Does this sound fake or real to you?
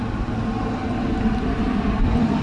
real